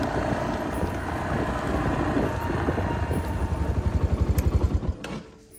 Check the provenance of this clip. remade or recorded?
recorded